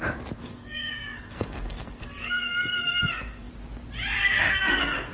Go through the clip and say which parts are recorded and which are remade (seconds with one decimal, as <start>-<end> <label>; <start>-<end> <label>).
0.0-0.4 recorded; 0.4-3.5 remade; 3.5-4.2 recorded; 4.2-5.1 remade